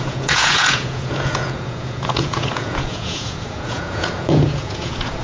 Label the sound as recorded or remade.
remade